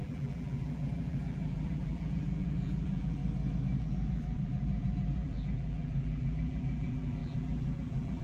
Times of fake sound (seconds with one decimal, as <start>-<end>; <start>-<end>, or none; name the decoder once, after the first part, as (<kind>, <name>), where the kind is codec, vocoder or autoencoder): 0.0-3.2 (vocoder, BigVGAN v2); 3.8-8.2